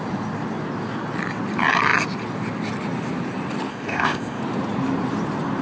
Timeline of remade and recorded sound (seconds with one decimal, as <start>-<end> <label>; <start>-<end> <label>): 0.0-3.7 recorded; 3.7-4.4 remade; 4.4-5.6 recorded